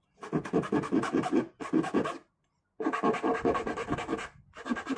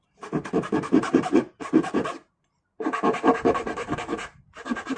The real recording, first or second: first